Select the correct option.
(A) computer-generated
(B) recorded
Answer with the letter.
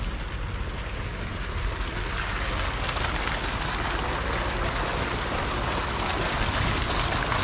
B